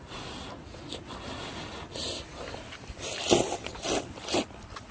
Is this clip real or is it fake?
real